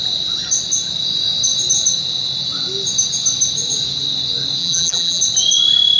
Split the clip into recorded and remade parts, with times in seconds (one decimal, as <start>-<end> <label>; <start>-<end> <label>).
0.0-4.6 recorded; 4.6-5.2 remade; 5.2-6.0 recorded